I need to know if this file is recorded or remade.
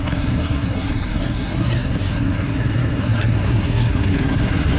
remade